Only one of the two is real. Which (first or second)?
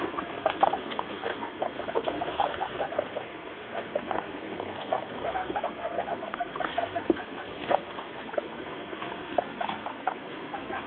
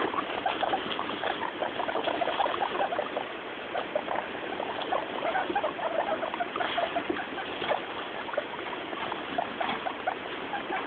second